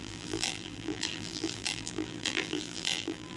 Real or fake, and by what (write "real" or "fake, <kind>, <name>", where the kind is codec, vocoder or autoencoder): fake, vocoder, BigVGAN v2